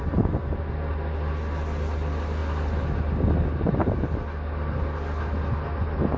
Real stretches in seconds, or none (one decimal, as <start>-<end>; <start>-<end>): 0.0-6.2

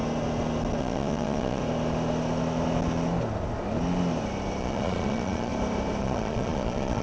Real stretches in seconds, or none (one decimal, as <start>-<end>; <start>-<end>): 0.0-0.8; 1.6-4.6; 5.5-6.0

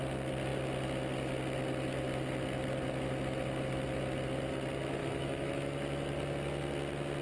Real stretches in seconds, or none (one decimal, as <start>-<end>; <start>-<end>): 0.0-5.0; 5.5-7.2

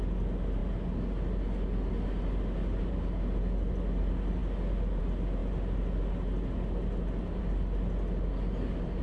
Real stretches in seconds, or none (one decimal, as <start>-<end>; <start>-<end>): 0.0-9.0

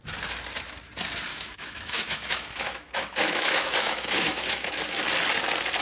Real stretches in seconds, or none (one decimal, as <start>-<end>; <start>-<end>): 0.0-1.3; 4.8-5.8

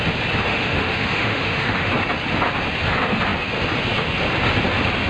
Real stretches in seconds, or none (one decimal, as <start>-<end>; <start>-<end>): 0.0-0.5; 1.9-5.1